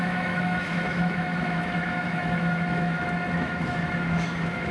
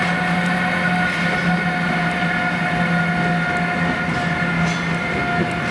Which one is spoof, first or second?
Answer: first